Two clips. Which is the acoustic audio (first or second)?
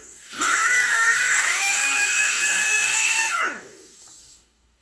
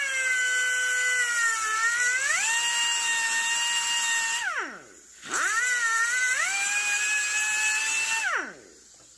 second